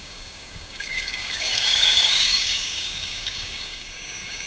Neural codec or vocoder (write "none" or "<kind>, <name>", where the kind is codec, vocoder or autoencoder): codec, DAC